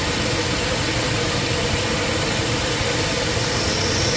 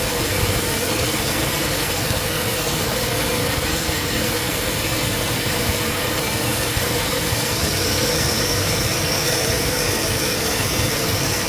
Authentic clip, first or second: first